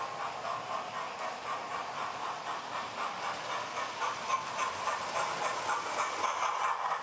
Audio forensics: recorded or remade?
recorded